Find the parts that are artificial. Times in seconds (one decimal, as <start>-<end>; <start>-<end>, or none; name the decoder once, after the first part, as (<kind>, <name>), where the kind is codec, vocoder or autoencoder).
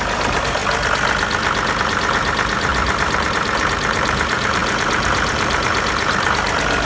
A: 0.0-0.6 (vocoder, BigVGAN v2); 1.8-6.9